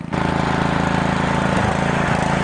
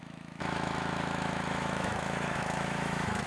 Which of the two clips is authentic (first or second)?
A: first